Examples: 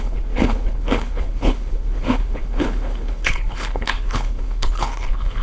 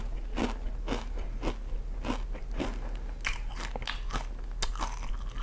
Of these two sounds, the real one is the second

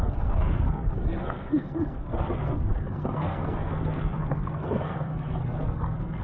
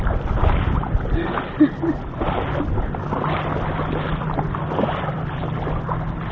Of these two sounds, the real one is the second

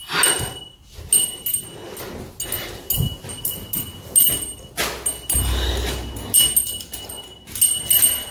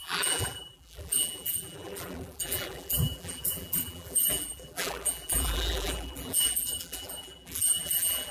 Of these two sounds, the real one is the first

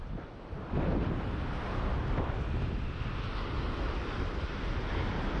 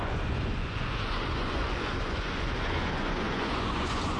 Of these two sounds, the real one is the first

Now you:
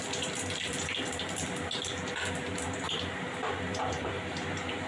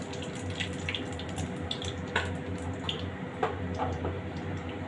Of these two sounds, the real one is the second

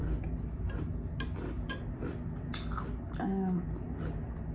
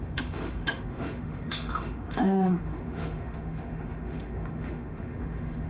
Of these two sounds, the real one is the first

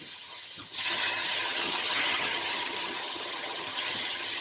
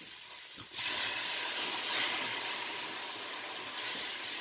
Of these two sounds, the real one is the second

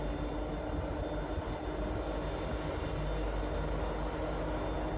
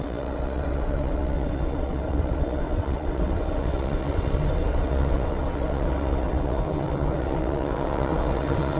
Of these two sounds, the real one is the first